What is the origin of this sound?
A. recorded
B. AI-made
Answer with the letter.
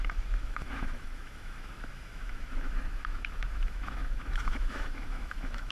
B